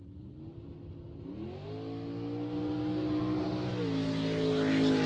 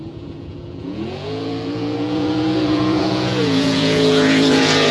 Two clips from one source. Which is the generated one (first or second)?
second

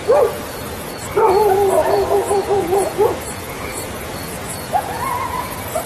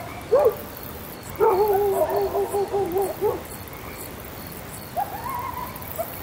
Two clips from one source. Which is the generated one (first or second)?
first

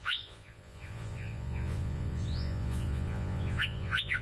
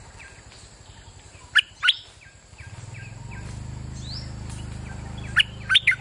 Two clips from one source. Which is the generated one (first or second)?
first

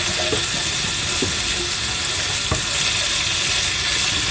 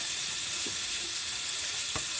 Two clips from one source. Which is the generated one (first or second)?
second